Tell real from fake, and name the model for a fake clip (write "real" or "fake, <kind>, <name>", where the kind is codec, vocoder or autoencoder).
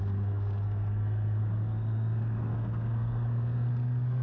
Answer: fake, codec, SNAC